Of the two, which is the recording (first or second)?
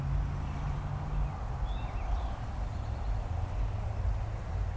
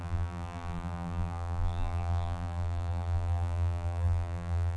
first